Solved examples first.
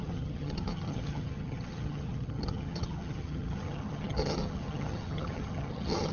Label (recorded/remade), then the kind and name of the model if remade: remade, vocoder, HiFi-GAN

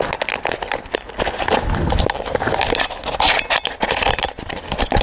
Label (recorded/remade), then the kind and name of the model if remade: recorded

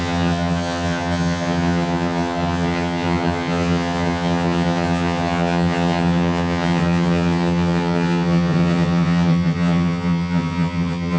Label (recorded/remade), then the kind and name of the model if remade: remade, vocoder, HiFi-GAN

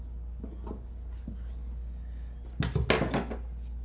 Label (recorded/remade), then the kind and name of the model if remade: recorded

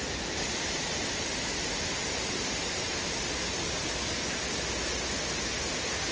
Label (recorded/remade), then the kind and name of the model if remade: recorded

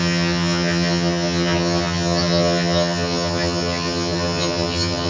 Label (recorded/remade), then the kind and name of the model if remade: remade, vocoder, HiFi-GAN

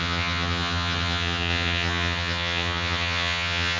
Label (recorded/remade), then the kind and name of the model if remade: remade, vocoder, HiFi-GAN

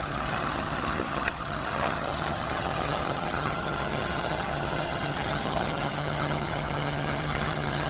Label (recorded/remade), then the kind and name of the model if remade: remade, vocoder, HiFi-GAN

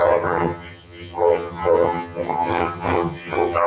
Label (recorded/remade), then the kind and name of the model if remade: remade, vocoder, HiFi-GAN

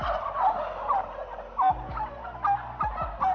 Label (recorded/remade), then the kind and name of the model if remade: recorded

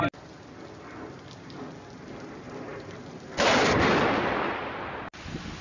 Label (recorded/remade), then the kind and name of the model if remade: recorded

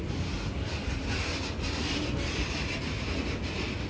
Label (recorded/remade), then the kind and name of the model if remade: recorded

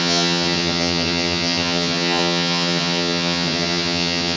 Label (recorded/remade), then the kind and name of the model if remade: remade, vocoder, HiFi-GAN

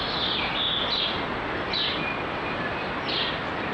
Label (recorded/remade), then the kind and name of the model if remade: recorded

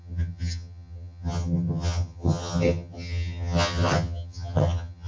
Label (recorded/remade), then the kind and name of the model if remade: remade, vocoder, HiFi-GAN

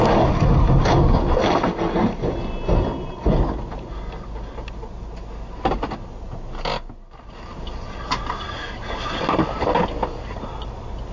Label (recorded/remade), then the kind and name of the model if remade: recorded